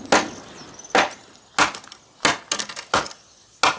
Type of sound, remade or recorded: recorded